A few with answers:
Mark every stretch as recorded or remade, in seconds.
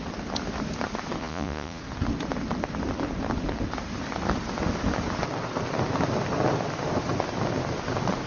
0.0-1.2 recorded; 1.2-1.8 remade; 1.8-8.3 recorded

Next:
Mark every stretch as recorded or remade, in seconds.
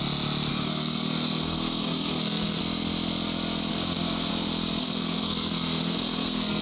0.0-0.5 recorded; 0.5-2.6 remade; 2.6-3.7 recorded; 3.7-4.3 remade; 4.3-4.8 recorded; 4.8-6.6 remade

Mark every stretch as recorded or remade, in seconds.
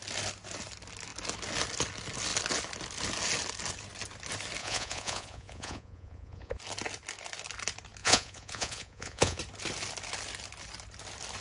0.0-4.6 recorded; 4.6-6.6 remade; 6.6-8.0 recorded; 8.0-9.4 remade; 9.4-11.4 recorded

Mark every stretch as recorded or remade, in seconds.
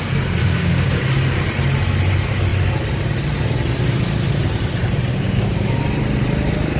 0.0-0.4 recorded; 0.4-1.0 remade; 1.0-5.1 recorded; 5.1-5.8 remade; 5.8-6.8 recorded